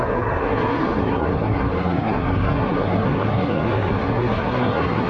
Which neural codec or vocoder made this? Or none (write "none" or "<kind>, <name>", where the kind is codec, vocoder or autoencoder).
codec, SNAC